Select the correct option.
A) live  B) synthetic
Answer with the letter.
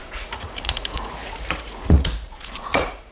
B